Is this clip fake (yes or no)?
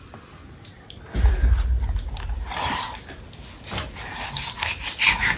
no